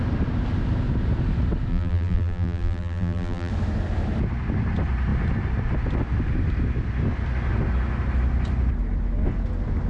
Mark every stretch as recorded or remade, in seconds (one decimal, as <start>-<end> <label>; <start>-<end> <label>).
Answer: 0.0-1.7 recorded; 1.7-3.5 remade; 3.5-9.9 recorded

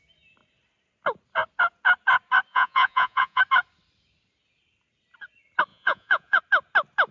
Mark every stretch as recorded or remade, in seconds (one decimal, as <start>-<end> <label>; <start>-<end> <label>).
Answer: 0.0-2.5 recorded; 2.5-3.4 remade; 3.4-5.7 recorded; 5.7-6.4 remade; 6.4-7.1 recorded

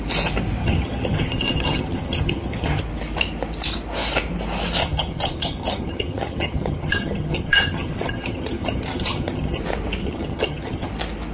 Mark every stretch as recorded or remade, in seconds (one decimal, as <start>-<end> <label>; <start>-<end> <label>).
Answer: 0.0-0.6 recorded; 0.6-2.8 remade; 2.8-4.8 recorded; 4.8-9.6 remade; 9.6-10.0 recorded; 10.0-10.9 remade; 10.9-11.3 recorded

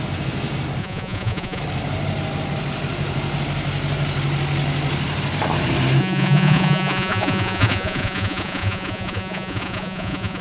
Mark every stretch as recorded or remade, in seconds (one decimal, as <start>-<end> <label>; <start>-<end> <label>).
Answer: 0.0-0.8 recorded; 0.8-1.6 remade; 1.6-6.0 recorded; 6.0-10.4 remade